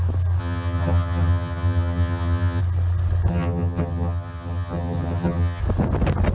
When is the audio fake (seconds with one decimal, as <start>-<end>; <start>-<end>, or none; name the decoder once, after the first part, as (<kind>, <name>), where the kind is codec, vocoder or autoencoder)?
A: 0.4-2.6 (vocoder, HiFi-GAN); 3.3-5.6